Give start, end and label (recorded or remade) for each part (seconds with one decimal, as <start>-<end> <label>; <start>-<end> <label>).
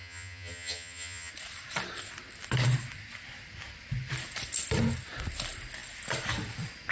0.0-1.3 remade; 1.3-6.9 recorded